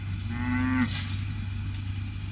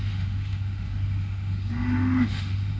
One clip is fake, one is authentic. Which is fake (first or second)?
second